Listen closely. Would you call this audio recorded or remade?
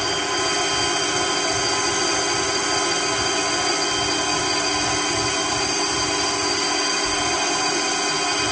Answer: recorded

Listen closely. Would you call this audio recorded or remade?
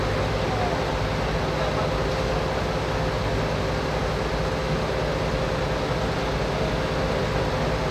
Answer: recorded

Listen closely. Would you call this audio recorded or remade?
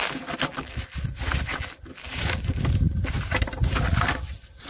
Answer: recorded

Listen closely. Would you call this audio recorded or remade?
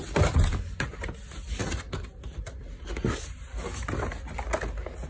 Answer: recorded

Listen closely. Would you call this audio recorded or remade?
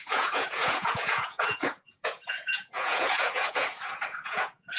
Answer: remade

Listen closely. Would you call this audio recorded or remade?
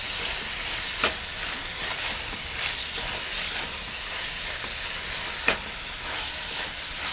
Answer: recorded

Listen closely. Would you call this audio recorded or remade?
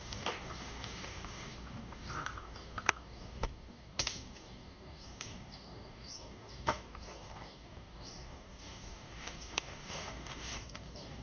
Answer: remade